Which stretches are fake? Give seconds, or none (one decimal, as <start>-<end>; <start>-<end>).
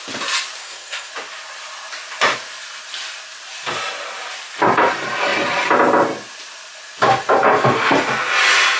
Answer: 0.6-1.1